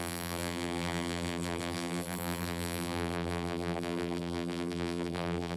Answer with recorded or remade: remade